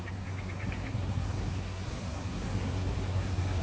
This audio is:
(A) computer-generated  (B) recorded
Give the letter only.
A